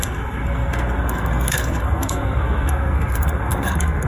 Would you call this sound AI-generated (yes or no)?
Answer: yes